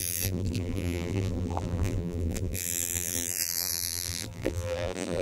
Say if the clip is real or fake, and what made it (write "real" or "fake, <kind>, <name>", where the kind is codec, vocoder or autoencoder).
fake, vocoder, BigVGAN v2